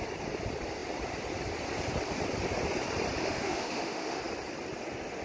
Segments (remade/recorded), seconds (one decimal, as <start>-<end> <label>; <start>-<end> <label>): 0.0-3.2 recorded; 3.2-4.2 remade; 4.2-5.2 recorded